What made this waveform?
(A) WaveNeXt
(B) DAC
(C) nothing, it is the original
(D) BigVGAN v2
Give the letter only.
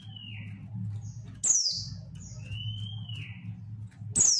C